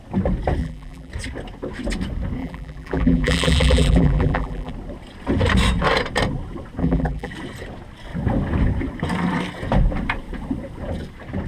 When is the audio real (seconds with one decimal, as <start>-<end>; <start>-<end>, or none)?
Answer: 0.0-0.6; 1.1-2.4; 4.7-6.8; 7.3-11.5